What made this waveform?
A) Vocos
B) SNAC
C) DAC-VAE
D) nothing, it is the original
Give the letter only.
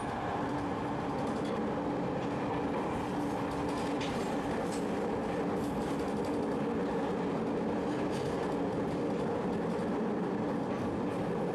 D